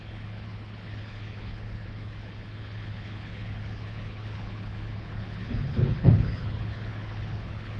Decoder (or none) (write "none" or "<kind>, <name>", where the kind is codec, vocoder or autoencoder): codec, HILCodec